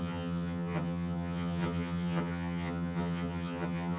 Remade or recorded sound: remade